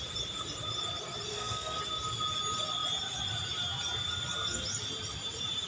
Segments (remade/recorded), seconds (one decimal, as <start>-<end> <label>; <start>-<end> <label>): 0.0-1.3 recorded; 1.3-1.8 remade; 1.8-5.7 recorded